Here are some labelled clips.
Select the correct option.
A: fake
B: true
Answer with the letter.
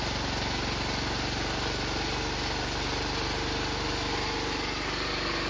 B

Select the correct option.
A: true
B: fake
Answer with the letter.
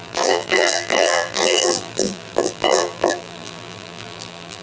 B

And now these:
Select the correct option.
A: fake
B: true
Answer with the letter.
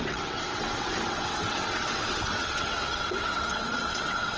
A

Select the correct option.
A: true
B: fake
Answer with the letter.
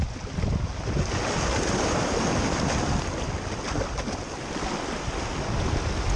A